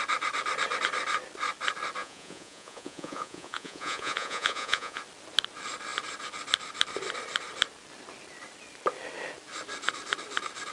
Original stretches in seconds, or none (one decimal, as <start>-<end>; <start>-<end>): 0.0-2.0; 5.0-10.7